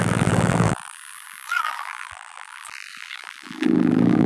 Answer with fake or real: fake